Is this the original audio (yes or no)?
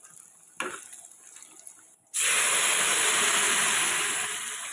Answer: yes